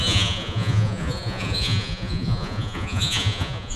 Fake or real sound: fake